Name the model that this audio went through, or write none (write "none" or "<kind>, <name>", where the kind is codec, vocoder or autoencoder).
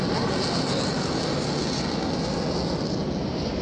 none